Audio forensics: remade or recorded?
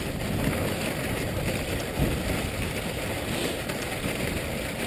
recorded